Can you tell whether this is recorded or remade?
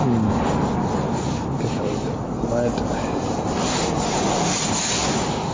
recorded